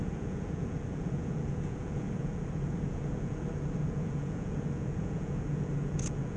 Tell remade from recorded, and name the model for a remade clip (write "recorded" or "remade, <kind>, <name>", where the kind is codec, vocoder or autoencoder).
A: remade, vocoder, Vocos